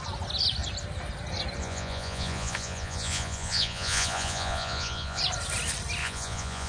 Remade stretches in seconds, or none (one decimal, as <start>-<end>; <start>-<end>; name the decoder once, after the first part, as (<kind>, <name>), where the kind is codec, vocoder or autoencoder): 1.6-5.2 (vocoder, Vocos); 6.0-6.7